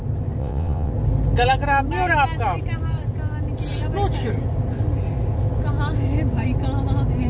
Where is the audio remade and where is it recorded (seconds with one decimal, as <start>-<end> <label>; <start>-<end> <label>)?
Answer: 0.0-0.4 recorded; 0.4-0.9 remade; 0.9-7.3 recorded